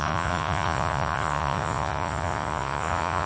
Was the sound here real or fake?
fake